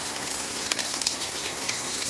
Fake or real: fake